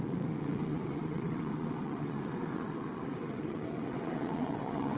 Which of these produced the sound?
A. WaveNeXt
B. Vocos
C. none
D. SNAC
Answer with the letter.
A